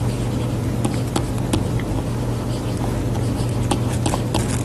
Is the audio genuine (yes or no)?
yes